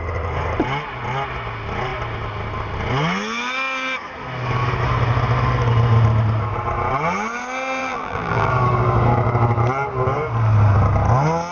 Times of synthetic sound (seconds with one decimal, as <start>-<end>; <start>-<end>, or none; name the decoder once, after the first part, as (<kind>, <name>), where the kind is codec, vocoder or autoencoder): 7.8-8.5 (vocoder, BigVGAN v2)